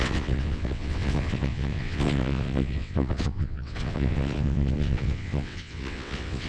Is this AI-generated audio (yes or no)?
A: yes